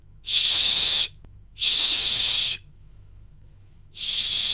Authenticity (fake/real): fake